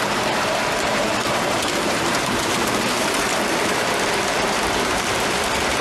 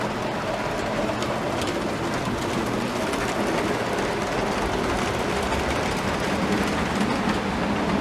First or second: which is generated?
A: first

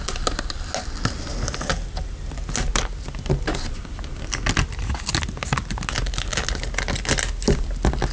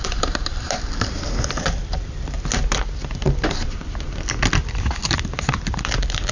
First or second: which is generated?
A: second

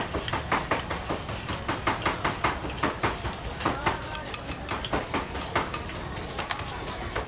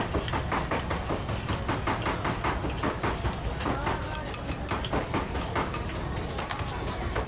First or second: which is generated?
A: first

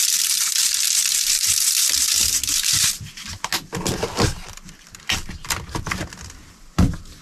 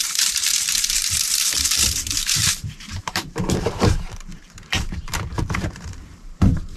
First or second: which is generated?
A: second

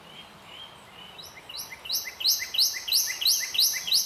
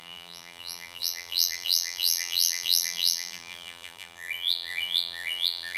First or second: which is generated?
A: second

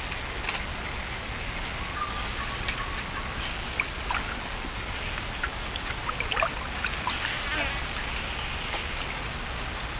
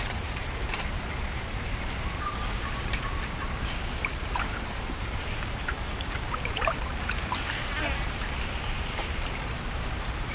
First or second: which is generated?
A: second